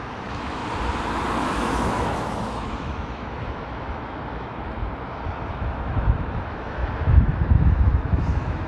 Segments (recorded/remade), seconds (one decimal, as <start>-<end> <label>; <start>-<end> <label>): 0.0-0.6 remade; 0.6-1.4 recorded; 1.4-4.8 remade; 4.8-5.5 recorded; 5.5-8.7 remade